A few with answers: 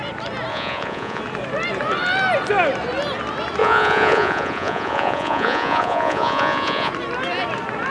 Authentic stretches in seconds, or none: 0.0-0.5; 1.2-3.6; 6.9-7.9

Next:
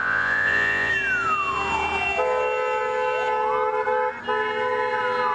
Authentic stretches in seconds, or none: 0.9-5.3

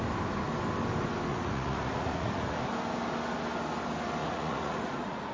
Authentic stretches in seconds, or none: 0.0-1.3; 2.6-4.2